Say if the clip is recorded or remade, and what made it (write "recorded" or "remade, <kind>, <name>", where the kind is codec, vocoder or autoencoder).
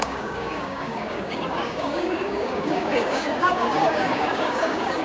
remade, codec, DAC